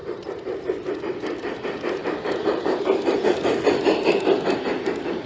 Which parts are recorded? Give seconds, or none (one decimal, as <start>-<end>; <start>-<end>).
0.0-2.0; 3.2-5.3